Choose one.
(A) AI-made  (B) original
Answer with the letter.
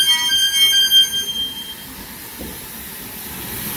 B